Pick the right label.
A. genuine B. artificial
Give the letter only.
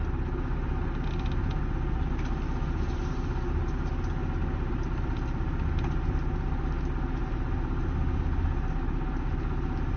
A